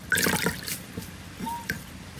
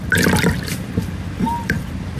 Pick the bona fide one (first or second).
second